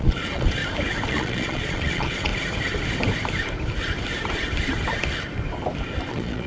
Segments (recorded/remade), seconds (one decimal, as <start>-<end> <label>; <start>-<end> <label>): 0.0-0.6 remade; 0.6-1.1 recorded; 1.1-2.3 remade; 2.3-6.1 recorded; 6.1-6.5 remade